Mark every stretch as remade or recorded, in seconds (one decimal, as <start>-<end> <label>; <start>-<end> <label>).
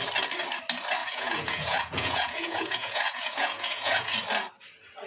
0.0-1.0 recorded; 1.0-4.1 remade; 4.1-5.1 recorded